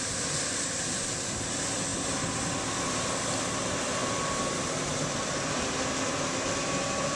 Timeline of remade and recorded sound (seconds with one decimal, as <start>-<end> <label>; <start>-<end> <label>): 0.0-4.0 recorded; 4.0-6.1 remade; 6.1-7.2 recorded